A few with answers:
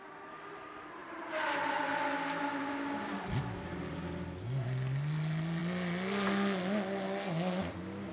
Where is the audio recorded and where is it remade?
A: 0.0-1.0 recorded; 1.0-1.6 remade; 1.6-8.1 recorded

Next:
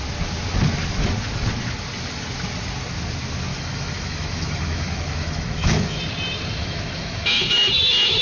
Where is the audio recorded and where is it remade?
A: 0.0-3.5 recorded; 3.5-6.0 remade; 6.0-6.6 recorded; 6.6-8.2 remade

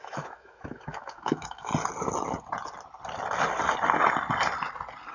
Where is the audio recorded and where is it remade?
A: 0.0-1.7 remade; 1.7-5.1 recorded

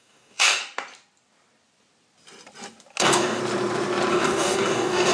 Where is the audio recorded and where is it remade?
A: 0.0-0.6 remade; 0.6-3.0 recorded; 3.0-3.4 remade; 3.4-4.1 recorded; 4.1-5.1 remade

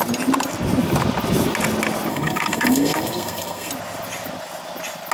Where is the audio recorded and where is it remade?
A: 0.0-2.1 recorded; 2.1-3.7 remade; 3.7-5.1 recorded

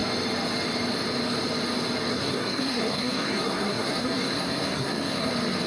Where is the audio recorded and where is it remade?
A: 0.0-2.1 recorded; 2.1-5.3 remade; 5.3-5.7 recorded